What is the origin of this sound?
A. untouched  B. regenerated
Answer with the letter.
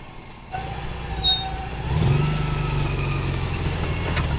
A